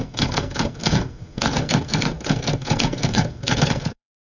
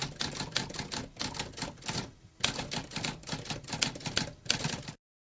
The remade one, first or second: first